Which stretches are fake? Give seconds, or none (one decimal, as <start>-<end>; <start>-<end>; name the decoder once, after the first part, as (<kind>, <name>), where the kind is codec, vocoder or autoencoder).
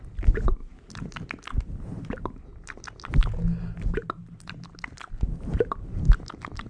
none